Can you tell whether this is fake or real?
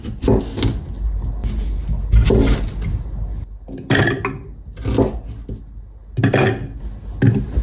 real